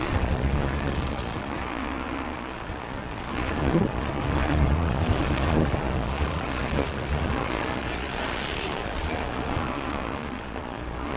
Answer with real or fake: fake